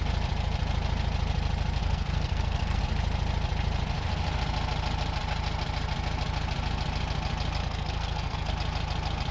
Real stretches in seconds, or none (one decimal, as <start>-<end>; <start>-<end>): 0.0-1.8; 2.8-7.6; 8.5-9.3